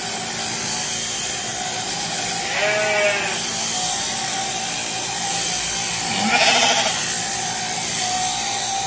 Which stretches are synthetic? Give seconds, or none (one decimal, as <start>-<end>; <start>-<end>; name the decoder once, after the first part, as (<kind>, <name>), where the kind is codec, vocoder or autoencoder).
none